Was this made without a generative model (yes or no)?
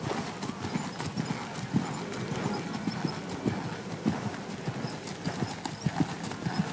yes